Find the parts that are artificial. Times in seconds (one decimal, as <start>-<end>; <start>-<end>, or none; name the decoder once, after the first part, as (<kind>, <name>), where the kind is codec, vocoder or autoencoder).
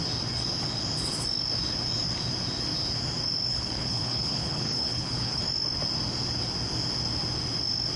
3.5-5.4 (codec, HILCodec)